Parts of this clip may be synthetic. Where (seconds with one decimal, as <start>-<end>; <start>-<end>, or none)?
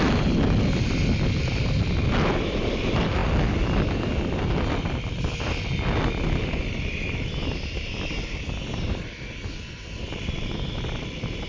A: none